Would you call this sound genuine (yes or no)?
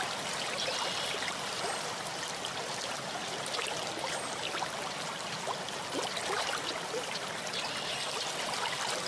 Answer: yes